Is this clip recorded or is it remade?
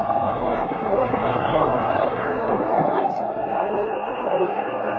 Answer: remade